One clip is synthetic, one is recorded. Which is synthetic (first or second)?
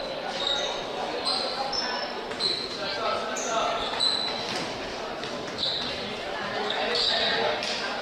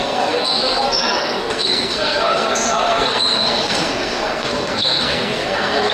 second